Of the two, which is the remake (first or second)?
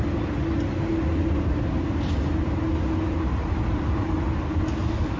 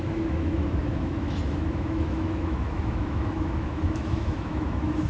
second